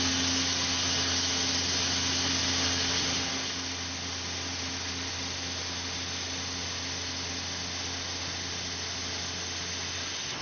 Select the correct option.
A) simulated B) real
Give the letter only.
B